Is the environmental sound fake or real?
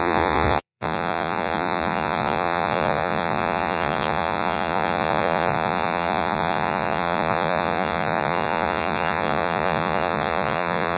fake